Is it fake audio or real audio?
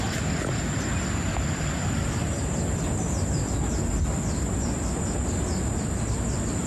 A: real